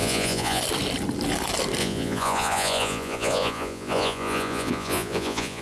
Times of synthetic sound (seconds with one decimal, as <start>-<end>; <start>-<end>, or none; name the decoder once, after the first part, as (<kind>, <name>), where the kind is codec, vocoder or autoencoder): 0.0-0.6 (vocoder, Vocos); 1.8-5.6

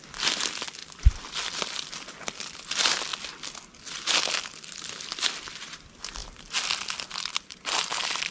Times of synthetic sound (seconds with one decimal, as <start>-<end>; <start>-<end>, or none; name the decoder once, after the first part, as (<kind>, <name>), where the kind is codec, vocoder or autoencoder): none

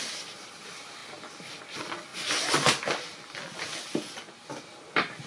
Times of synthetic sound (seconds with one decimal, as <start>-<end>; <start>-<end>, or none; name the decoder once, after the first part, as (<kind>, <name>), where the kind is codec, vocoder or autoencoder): none

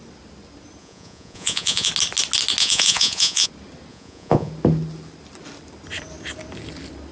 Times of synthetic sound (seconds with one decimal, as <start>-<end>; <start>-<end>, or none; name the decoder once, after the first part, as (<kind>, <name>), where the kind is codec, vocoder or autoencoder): 0.8-1.9 (vocoder, Vocos); 2.6-3.5; 3.9-4.5